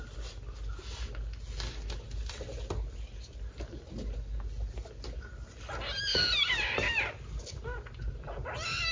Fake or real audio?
real